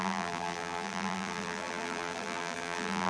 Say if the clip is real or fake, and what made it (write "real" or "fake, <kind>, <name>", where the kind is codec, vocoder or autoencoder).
fake, vocoder, BigVGAN v2